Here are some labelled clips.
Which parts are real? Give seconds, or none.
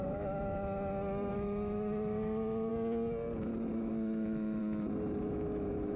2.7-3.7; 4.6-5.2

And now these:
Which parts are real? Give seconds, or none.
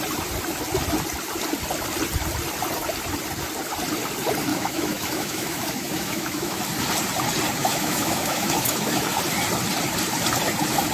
0.0-4.5; 6.6-7.6; 9.0-10.9